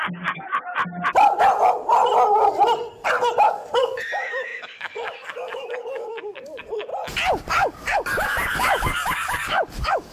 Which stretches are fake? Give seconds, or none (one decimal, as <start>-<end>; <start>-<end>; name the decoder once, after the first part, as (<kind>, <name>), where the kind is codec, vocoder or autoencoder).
0.0-0.8 (codec, DAC); 3.4-6.9; 7.5-10.1